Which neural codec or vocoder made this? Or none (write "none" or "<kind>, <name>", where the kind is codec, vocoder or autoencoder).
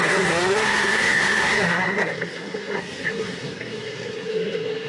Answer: codec, SNAC